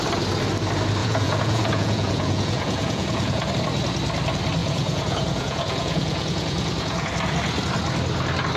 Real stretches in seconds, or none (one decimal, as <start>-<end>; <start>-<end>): 0.0-1.0; 3.5-4.6; 7.1-8.6